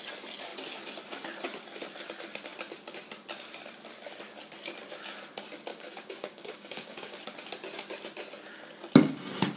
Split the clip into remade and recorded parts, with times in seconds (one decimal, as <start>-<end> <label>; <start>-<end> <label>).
0.0-5.7 recorded; 5.7-7.2 remade; 7.2-9.6 recorded